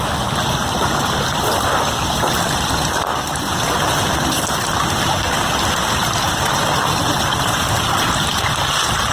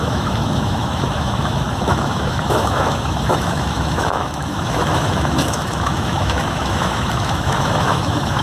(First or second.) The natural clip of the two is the first